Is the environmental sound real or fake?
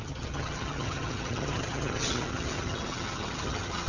fake